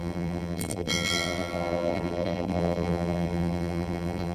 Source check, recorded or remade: remade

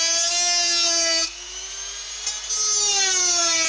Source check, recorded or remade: recorded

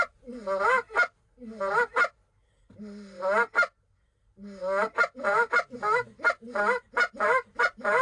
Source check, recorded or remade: recorded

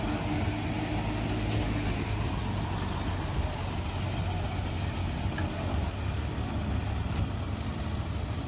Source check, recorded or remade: recorded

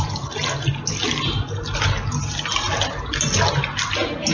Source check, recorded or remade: recorded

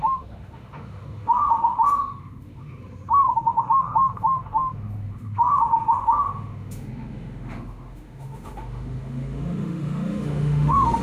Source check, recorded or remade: remade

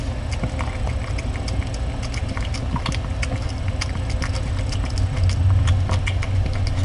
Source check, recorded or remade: recorded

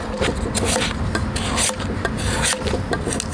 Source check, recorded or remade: recorded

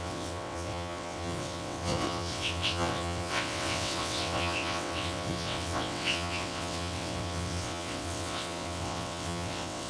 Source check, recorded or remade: remade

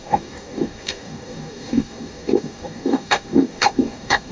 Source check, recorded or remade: remade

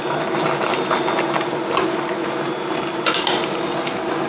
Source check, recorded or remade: recorded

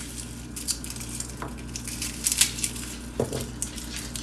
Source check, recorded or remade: recorded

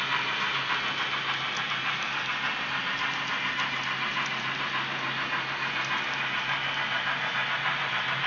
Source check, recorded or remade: recorded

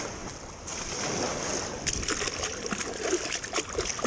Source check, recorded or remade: recorded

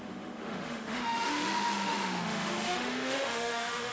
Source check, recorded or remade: remade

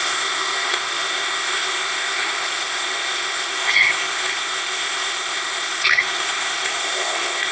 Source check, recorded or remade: remade